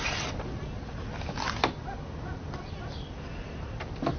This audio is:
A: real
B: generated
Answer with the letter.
A